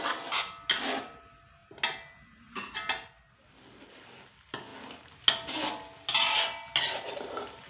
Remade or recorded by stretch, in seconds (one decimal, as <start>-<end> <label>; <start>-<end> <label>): 0.0-7.7 recorded